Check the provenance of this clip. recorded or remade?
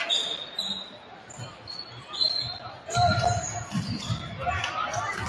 recorded